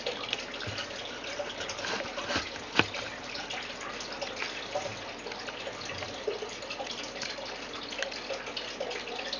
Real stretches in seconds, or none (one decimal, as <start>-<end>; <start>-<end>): 0.0-9.4